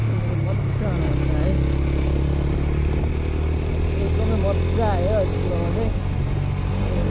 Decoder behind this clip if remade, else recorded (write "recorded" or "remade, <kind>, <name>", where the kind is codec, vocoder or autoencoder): recorded